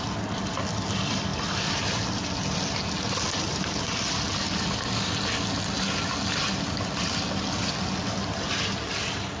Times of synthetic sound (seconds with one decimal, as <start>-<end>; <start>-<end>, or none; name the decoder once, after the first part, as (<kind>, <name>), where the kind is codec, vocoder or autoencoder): none